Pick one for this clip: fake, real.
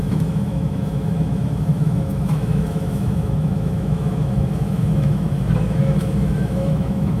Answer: fake